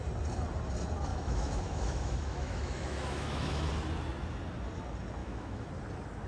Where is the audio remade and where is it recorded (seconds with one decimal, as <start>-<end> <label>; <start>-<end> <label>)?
0.0-1.1 recorded; 1.1-3.7 remade; 3.7-5.2 recorded; 5.2-5.7 remade; 5.7-6.3 recorded